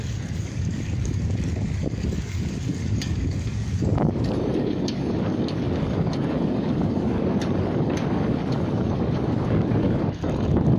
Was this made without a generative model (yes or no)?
no